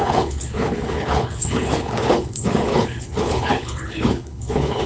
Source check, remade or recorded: remade